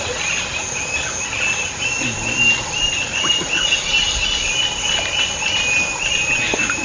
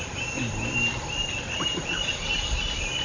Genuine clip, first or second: first